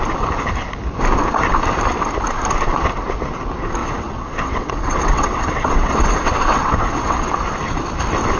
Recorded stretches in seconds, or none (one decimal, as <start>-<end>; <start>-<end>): 0.0-3.8; 7.3-8.4